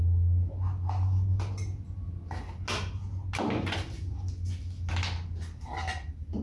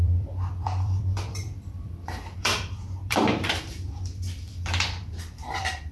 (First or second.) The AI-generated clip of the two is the second